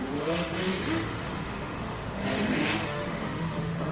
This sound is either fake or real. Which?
fake